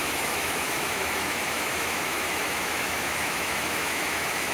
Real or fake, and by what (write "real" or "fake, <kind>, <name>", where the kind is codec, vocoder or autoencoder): fake, autoencoder, DAC-VAE